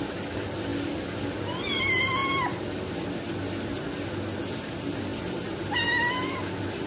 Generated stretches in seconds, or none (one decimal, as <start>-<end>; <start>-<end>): none